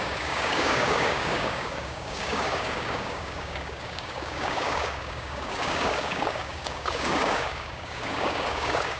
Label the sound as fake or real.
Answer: fake